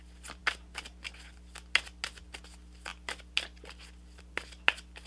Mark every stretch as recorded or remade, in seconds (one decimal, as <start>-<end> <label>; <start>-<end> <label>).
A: 0.0-5.1 recorded